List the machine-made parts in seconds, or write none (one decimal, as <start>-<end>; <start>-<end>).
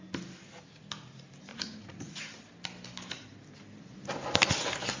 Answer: 1.5-2.2